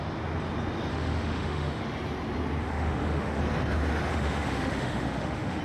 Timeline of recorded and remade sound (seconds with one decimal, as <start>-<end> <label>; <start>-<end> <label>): 0.0-0.9 recorded; 0.9-1.8 remade; 1.8-2.6 recorded; 2.6-3.4 remade; 3.4-4.1 recorded; 4.1-5.6 remade